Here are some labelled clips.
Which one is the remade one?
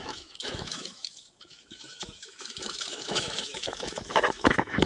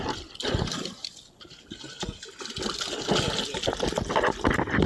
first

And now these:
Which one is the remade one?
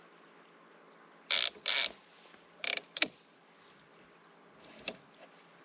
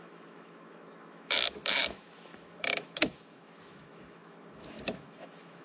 second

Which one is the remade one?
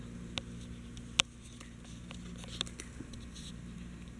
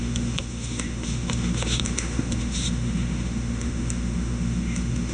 second